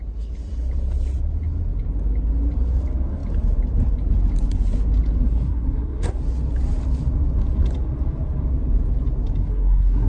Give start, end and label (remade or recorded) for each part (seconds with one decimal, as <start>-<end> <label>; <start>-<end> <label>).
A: 0.0-5.2 recorded; 5.2-6.2 remade; 6.2-9.4 recorded; 9.4-10.1 remade